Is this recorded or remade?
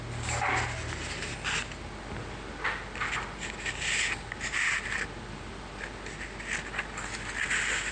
recorded